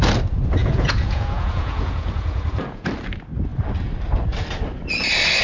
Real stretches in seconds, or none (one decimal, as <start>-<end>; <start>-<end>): 0.0-0.6; 2.9-5.4